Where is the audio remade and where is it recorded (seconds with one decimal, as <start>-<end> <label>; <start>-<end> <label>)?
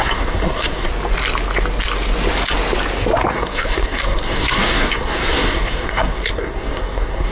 0.0-0.9 remade; 0.9-3.3 recorded; 3.3-7.3 remade